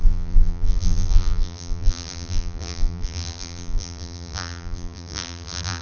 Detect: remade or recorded remade